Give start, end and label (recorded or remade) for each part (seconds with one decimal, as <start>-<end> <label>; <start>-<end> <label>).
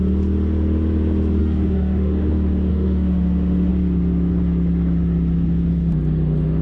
0.0-1.4 recorded; 1.4-2.3 remade; 2.3-2.7 recorded; 2.7-3.7 remade; 3.7-6.6 recorded